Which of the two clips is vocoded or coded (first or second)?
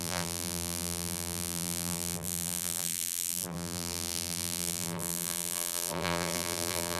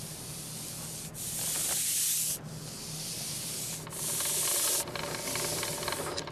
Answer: first